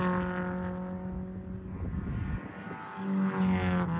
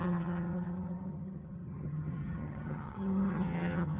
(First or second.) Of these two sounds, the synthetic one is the second